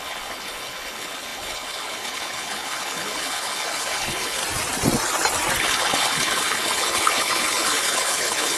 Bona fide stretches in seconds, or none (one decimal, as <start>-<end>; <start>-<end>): 4.4-5.6

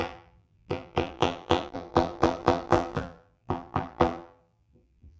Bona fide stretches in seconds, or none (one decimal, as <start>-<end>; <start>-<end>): none

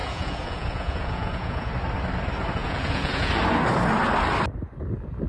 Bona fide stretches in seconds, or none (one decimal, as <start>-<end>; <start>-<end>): 1.7-2.6; 3.3-5.3